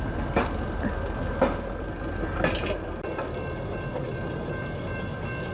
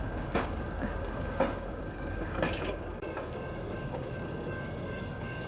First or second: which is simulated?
second